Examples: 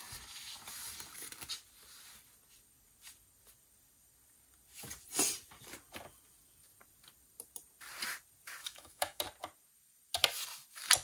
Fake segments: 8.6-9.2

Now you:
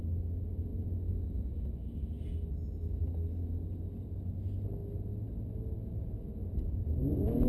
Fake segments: none